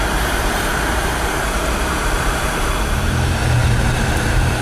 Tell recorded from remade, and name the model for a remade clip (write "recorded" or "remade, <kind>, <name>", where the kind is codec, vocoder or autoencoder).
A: remade, vocoder, BigVGAN v2